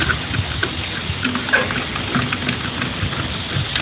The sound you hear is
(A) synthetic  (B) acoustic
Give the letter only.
B